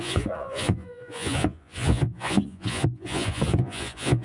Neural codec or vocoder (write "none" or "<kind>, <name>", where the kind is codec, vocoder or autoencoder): vocoder, Vocos